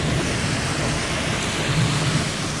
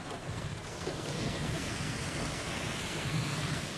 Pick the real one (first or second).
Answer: first